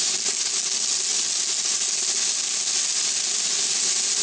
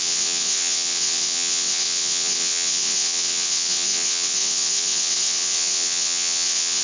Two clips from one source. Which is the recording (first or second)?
first